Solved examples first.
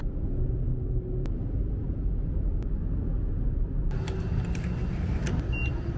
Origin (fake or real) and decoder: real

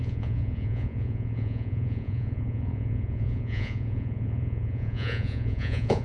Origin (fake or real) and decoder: fake, vocoder, Vocos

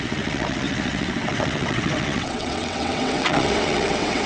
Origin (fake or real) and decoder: fake, vocoder, WaveNeXt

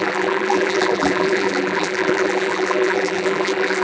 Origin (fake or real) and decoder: fake, vocoder, BigVGAN v2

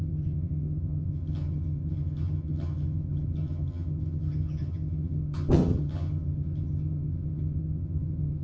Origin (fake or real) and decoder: fake, vocoder, HiFi-GAN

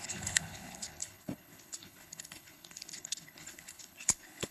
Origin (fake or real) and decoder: fake, codec, HILCodec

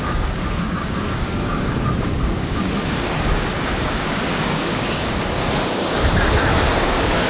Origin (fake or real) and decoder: fake, codec, DAC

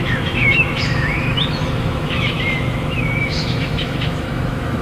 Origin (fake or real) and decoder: fake, autoencoder, DAC-VAE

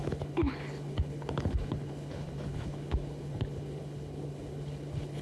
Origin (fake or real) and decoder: fake, codec, HILCodec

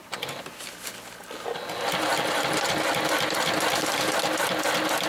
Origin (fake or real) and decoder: real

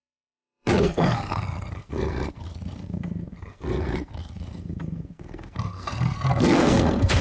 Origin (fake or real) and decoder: fake, codec, SNAC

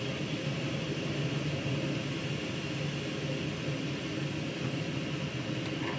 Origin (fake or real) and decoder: real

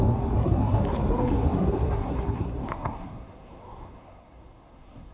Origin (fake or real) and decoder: fake, codec, SNAC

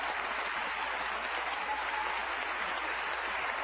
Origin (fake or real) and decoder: real